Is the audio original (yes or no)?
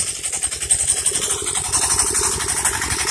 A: yes